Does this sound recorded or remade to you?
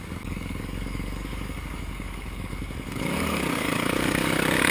remade